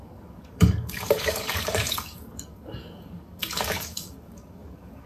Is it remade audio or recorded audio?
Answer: remade